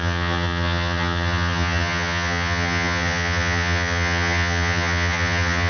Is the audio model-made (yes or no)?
yes